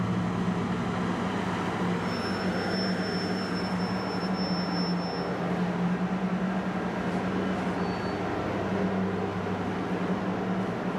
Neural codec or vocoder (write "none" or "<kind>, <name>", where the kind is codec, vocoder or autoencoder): none